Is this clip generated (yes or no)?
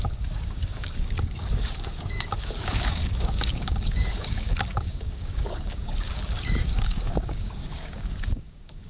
yes